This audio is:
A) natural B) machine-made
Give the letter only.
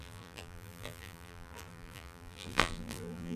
B